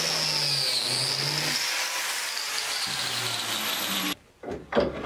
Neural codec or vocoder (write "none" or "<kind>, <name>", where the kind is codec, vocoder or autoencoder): none